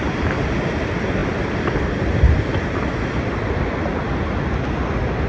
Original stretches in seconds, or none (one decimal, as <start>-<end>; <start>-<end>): 0.0-1.2; 3.5-5.3